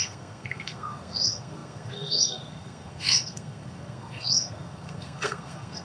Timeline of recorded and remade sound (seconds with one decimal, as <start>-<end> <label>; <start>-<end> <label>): 0.0-5.8 remade

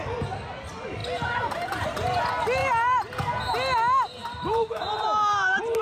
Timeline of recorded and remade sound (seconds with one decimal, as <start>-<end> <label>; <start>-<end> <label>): 0.0-2.6 recorded; 2.6-3.3 remade; 3.3-4.2 recorded; 4.2-5.8 remade

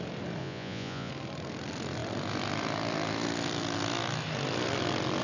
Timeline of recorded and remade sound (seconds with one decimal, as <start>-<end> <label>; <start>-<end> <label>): 0.0-0.4 recorded; 0.4-1.1 remade; 1.1-5.2 recorded

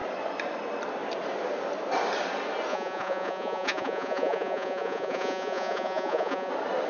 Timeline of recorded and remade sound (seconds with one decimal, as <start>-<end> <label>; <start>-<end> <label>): 0.0-2.7 recorded; 2.7-6.5 remade; 6.5-6.9 recorded

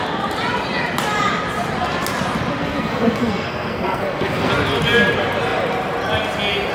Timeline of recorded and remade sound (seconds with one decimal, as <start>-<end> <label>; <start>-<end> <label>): 0.0-2.6 recorded; 2.6-4.5 remade; 4.5-6.7 recorded

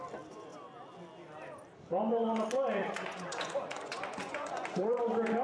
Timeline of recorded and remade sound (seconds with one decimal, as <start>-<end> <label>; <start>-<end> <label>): 0.0-2.8 recorded; 2.8-5.0 remade; 5.0-5.4 recorded

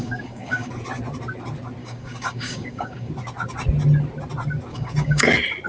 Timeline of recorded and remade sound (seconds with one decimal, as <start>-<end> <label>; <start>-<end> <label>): 0.0-0.7 remade; 0.7-1.8 recorded; 1.8-3.1 remade; 3.1-4.7 recorded; 4.7-5.2 remade; 5.2-5.7 recorded

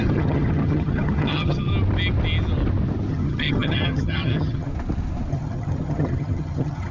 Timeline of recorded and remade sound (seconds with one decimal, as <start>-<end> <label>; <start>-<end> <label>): 0.0-1.7 remade; 1.7-3.1 recorded; 3.1-4.7 remade; 4.7-5.3 recorded; 5.3-6.9 remade